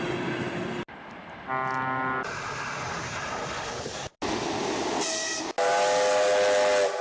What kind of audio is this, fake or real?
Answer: real